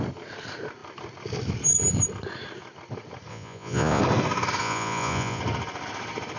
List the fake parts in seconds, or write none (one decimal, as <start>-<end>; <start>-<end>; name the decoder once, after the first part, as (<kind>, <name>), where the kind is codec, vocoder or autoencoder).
3.3-4.0 (vocoder, Vocos); 4.6-5.4